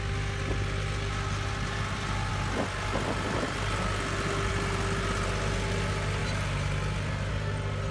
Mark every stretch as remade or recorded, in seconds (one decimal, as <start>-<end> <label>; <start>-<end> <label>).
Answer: 0.0-7.9 recorded